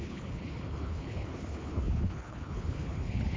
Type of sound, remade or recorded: remade